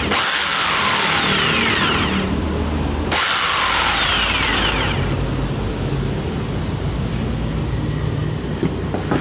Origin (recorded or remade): recorded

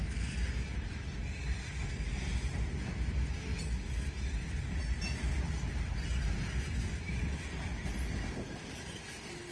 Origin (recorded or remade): recorded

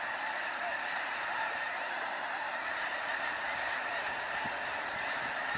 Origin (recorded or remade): remade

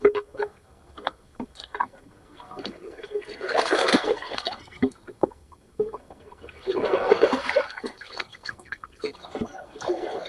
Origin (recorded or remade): remade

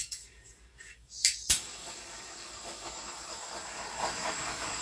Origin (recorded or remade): remade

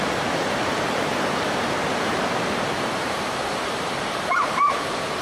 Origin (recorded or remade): remade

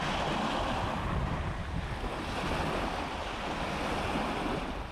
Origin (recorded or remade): recorded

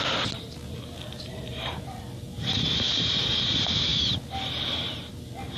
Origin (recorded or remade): recorded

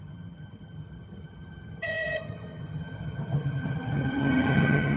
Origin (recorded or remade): remade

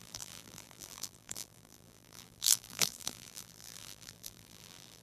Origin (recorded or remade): remade